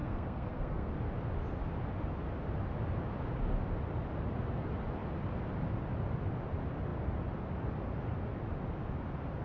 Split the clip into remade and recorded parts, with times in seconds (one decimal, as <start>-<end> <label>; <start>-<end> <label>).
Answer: 0.0-0.9 remade; 0.9-9.4 recorded